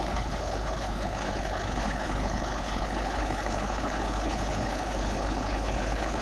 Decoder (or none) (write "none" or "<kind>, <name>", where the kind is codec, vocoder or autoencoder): codec, HILCodec